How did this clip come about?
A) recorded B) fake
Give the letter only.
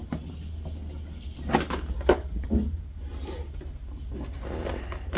A